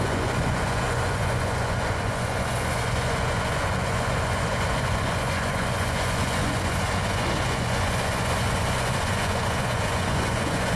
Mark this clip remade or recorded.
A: remade